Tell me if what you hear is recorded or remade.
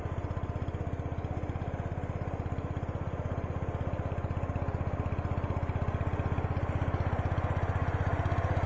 recorded